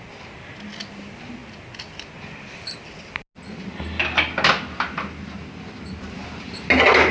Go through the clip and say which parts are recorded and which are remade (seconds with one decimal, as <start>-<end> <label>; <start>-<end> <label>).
0.0-7.1 recorded